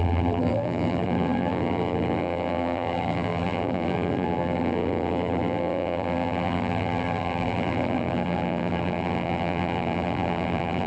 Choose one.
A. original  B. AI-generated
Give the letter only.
B